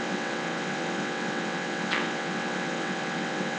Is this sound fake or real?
fake